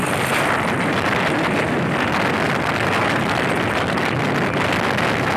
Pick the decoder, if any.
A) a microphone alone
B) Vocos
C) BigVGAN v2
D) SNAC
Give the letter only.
A